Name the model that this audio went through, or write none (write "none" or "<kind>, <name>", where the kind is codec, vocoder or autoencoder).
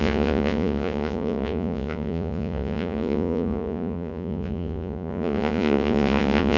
vocoder, Vocos